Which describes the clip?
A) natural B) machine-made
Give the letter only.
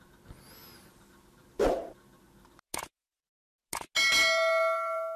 A